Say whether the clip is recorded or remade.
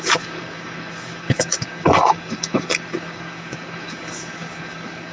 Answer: remade